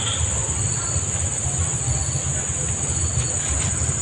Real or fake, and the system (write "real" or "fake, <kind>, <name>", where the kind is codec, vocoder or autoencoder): real